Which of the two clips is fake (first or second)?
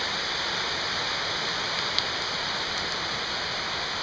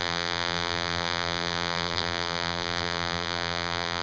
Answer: second